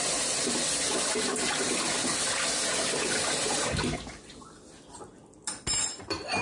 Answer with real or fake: real